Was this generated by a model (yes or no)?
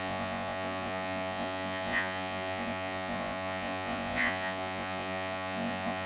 yes